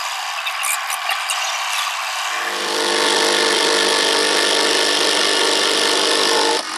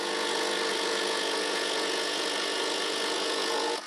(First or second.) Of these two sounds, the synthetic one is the second